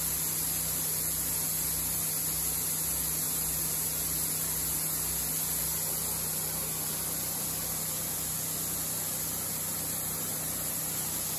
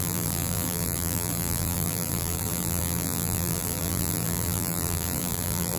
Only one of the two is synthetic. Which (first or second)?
second